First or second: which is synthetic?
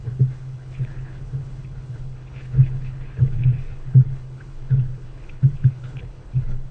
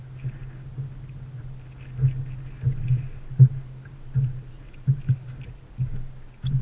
first